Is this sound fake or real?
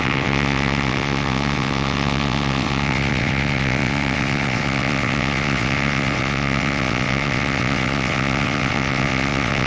fake